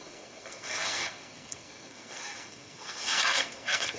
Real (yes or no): no